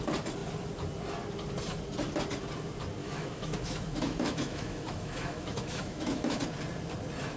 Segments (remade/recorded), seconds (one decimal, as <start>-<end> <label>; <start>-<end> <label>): 0.0-3.0 recorded; 3.0-6.4 remade; 6.4-7.4 recorded